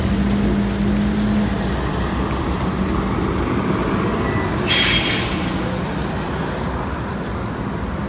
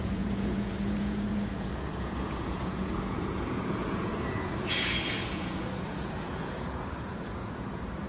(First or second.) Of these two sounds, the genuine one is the first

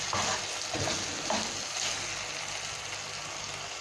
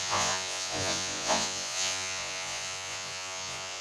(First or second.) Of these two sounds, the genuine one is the first